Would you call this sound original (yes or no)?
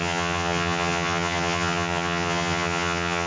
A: no